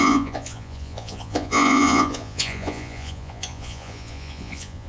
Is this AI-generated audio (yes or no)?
yes